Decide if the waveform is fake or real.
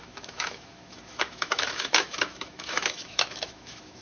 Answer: fake